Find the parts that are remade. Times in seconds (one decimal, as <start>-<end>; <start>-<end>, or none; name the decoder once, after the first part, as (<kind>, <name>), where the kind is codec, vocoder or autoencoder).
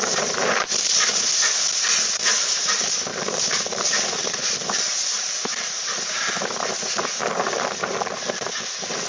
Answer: 0.0-1.1 (vocoder, BigVGAN v2); 2.6-9.1